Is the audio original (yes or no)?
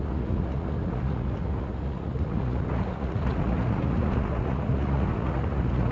no